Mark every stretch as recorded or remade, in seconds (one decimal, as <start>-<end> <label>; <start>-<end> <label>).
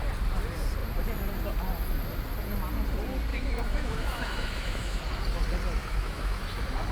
0.0-3.3 recorded; 3.3-5.0 remade; 5.0-5.8 recorded; 5.8-6.5 remade; 6.5-6.9 recorded